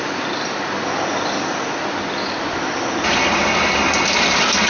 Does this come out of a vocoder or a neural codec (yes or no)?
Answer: no